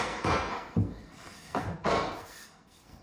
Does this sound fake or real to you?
fake